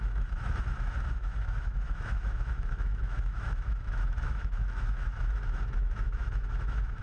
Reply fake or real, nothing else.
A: fake